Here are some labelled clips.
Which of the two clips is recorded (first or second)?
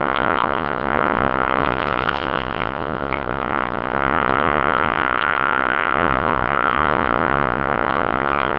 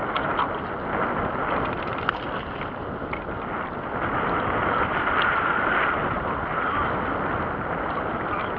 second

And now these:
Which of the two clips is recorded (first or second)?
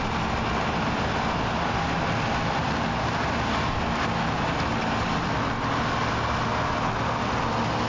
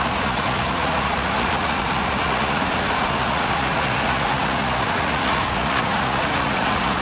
first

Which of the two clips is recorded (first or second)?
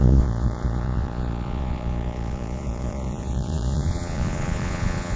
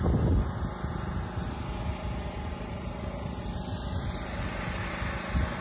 second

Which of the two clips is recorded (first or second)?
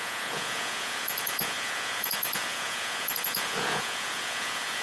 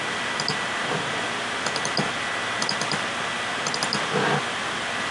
second